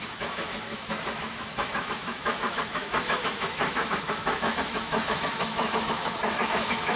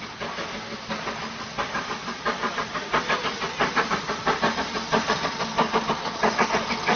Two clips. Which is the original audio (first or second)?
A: second